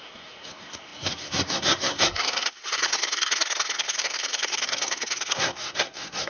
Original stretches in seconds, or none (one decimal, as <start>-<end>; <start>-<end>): none